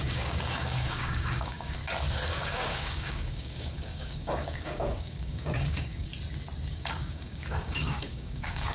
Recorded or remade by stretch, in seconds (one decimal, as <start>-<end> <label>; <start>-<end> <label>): 0.0-1.8 remade; 1.8-2.3 recorded; 2.3-6.1 remade; 6.1-6.7 recorded; 6.7-8.7 remade